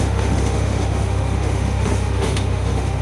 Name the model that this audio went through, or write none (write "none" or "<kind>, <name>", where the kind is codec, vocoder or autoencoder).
autoencoder, DAC-VAE